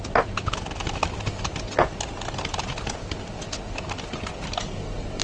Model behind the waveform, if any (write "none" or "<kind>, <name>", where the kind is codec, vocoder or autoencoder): none